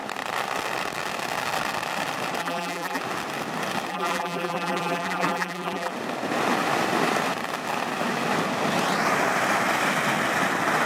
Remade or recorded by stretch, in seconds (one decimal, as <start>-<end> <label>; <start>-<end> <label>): 0.0-2.4 recorded; 2.4-3.0 remade; 3.0-3.9 recorded; 3.9-5.9 remade; 5.9-10.9 recorded